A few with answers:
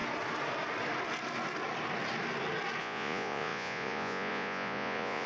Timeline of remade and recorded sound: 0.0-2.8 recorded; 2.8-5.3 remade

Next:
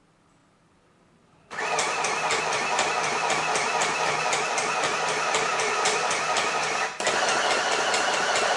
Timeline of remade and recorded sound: 0.0-8.6 recorded